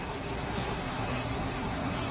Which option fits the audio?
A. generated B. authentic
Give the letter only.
A